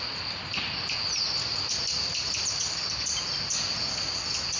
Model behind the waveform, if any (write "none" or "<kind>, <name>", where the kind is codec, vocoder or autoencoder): none